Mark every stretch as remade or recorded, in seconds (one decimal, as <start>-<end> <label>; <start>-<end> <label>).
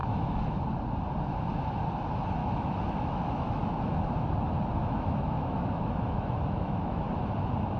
0.0-0.6 remade; 0.6-2.4 recorded; 2.4-4.3 remade; 4.3-4.8 recorded; 4.8-7.2 remade; 7.2-7.8 recorded